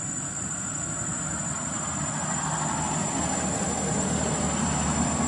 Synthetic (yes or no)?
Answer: no